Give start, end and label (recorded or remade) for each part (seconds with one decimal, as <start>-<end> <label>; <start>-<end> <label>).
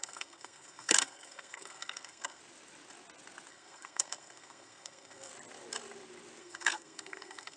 0.0-2.4 remade; 2.4-3.5 recorded; 3.5-5.3 remade; 5.3-6.4 recorded; 6.4-7.6 remade